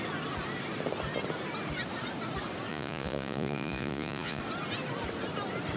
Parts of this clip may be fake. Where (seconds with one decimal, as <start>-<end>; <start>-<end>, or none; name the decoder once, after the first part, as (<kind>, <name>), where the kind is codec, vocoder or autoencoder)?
2.7-4.4 (vocoder, Vocos)